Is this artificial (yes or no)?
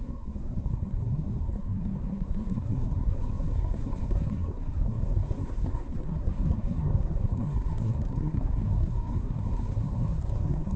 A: yes